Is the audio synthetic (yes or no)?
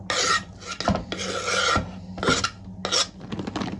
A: no